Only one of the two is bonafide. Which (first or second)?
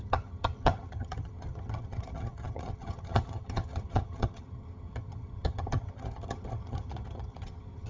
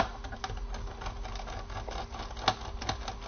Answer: second